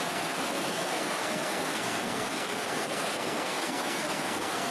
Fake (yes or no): yes